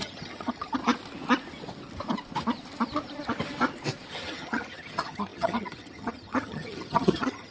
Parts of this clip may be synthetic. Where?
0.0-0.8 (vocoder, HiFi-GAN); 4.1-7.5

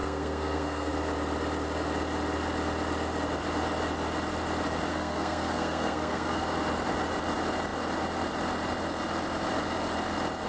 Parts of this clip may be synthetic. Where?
0.0-0.9 (codec, SNAC); 4.9-6.4

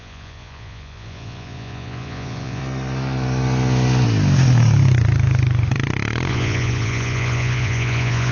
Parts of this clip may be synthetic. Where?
0.0-2.6 (vocoder, Vocos); 6.3-8.3

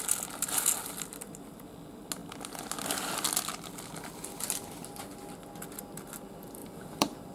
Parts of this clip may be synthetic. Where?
6.6-7.3 (vocoder, BigVGAN v2)